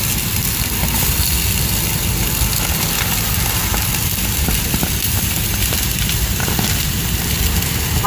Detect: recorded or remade recorded